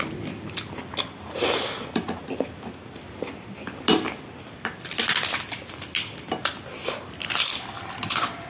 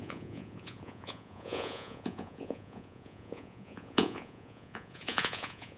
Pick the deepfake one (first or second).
second